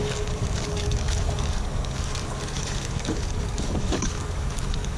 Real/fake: fake